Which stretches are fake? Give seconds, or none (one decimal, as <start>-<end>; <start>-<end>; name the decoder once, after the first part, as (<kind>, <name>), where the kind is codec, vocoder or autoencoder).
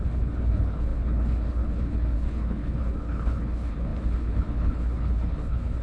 0.0-5.8 (codec, HILCodec)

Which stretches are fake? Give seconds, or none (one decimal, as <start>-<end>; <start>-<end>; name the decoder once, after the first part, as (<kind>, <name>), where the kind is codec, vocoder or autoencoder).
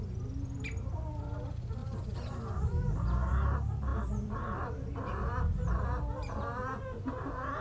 none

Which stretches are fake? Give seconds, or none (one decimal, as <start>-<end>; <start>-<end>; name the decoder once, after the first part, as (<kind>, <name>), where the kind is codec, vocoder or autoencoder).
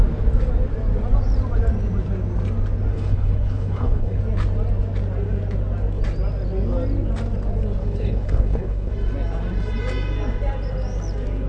2.9-4.2 (codec, HILCodec); 7.8-8.9